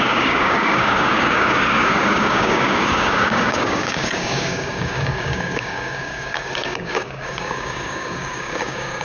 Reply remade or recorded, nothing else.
remade